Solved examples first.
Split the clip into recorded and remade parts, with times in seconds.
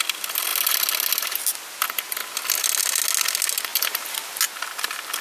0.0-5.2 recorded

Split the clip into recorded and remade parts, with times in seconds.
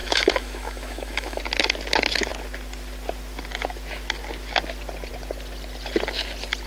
0.0-1.4 remade; 1.4-6.7 recorded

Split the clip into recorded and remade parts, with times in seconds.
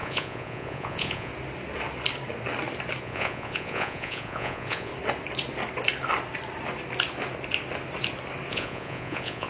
0.0-1.3 remade; 1.3-3.0 recorded; 3.0-4.9 remade; 4.9-8.5 recorded; 8.5-9.5 remade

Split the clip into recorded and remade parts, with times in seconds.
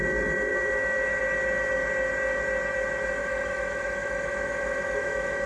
0.0-0.5 recorded; 0.5-1.2 remade; 1.2-3.2 recorded; 3.2-5.5 remade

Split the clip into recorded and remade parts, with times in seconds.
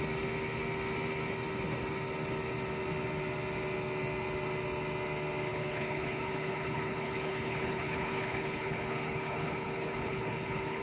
0.0-5.5 recorded; 5.5-10.8 remade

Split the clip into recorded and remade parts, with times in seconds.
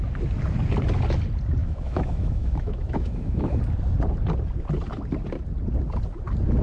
0.0-1.6 recorded; 1.6-3.6 remade; 3.6-6.6 recorded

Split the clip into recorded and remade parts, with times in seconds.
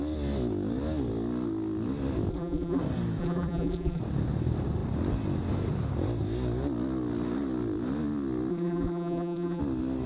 0.0-2.3 recorded; 2.3-2.8 remade; 2.8-3.2 recorded; 3.2-4.0 remade; 4.0-8.5 recorded; 8.5-9.6 remade; 9.6-10.1 recorded